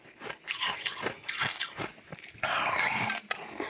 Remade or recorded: recorded